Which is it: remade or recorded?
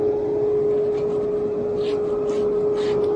recorded